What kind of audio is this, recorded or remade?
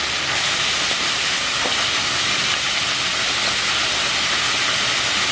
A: recorded